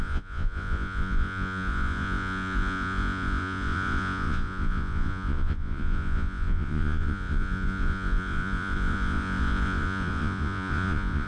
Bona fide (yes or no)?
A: no